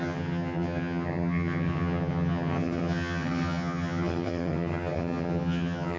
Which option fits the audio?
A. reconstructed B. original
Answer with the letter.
A